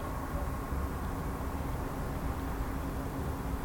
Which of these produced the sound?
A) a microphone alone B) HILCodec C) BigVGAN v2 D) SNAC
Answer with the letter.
A